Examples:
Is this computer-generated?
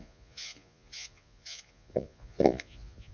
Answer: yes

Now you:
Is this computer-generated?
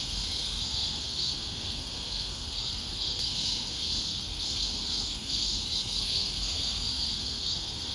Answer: yes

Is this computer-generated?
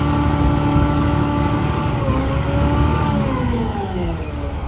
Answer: yes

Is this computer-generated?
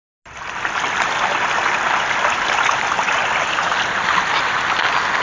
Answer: no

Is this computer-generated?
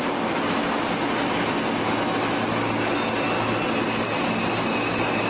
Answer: no